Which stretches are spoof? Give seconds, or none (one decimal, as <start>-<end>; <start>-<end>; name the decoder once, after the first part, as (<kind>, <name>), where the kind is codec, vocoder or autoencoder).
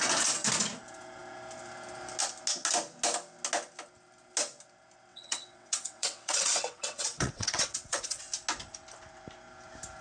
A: 5.1-8.2 (vocoder, WaveNeXt)